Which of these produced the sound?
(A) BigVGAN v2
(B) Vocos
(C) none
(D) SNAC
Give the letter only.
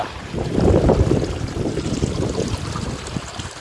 C